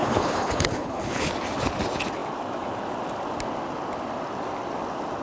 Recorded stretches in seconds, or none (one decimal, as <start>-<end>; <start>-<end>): 1.3-5.2